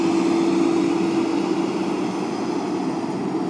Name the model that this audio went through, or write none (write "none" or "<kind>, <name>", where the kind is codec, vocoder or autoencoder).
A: none